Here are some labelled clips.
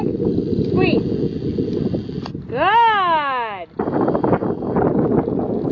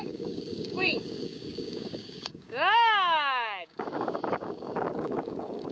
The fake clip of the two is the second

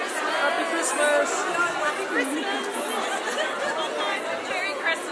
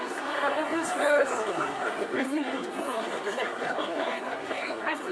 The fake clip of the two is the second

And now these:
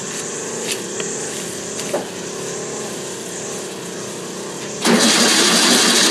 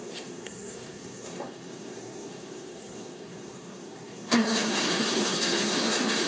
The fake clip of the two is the second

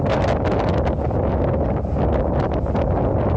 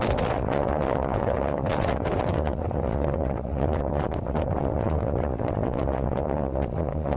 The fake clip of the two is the second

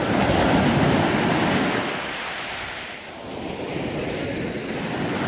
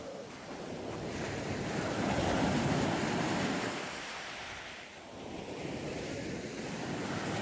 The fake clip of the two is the second